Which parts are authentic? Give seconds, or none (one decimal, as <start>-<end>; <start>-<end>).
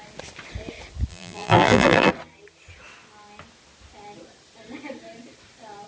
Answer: 0.0-1.1; 2.1-5.9